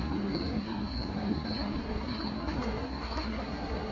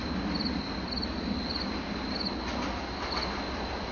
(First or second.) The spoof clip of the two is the first